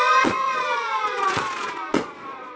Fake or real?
fake